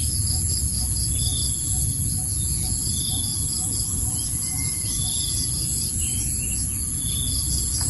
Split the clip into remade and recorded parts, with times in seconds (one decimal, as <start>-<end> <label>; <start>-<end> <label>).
0.0-7.9 recorded

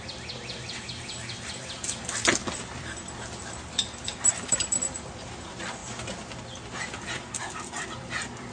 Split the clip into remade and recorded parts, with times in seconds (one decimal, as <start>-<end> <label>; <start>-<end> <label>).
0.0-5.8 remade; 5.8-6.8 recorded; 6.8-8.5 remade

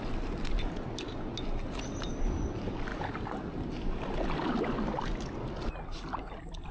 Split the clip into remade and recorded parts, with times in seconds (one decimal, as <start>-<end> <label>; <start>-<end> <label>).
0.0-6.7 recorded

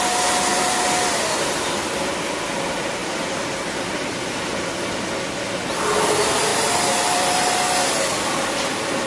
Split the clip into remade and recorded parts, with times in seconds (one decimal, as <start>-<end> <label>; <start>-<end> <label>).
0.0-0.5 recorded; 0.5-1.9 remade; 1.9-3.0 recorded; 3.0-5.3 remade; 5.3-6.5 recorded; 6.5-7.5 remade; 7.5-9.1 recorded